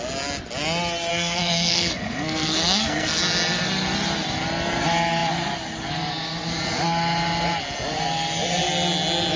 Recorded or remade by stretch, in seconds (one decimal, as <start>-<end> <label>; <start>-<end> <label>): 0.0-1.1 recorded; 1.1-3.2 remade; 3.2-9.4 recorded